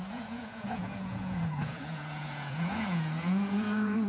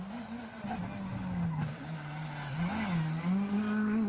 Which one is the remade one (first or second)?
first